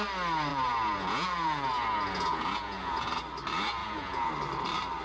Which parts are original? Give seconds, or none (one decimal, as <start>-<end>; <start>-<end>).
0.0-0.5; 3.2-3.8; 4.3-5.0